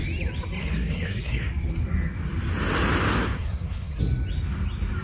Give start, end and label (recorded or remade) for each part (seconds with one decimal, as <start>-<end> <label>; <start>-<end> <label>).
0.0-0.6 recorded; 0.6-1.5 remade; 1.5-3.2 recorded; 3.2-4.0 remade; 4.0-5.0 recorded